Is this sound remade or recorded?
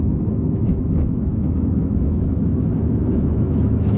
remade